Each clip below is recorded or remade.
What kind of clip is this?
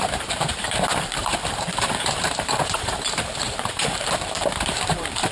remade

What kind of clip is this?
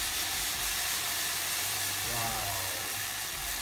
remade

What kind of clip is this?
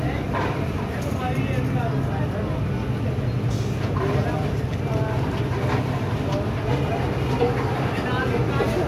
recorded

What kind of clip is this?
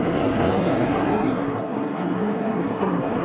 remade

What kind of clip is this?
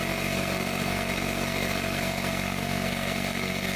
remade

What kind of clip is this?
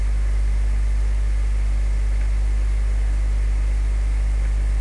recorded